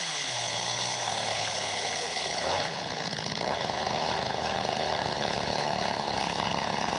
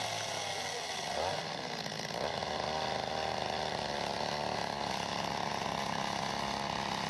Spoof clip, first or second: first